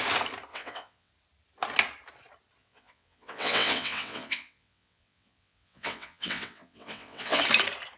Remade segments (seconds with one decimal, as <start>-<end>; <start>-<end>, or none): 0.5-1.1; 2.6-7.4